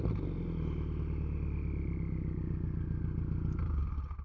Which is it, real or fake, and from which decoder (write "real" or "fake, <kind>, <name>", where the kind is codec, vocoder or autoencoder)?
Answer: real